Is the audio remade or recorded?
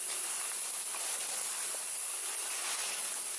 remade